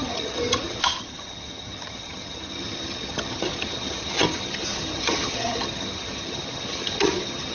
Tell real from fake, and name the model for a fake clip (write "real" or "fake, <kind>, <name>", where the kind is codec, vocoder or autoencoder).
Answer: fake, vocoder, HiFi-GAN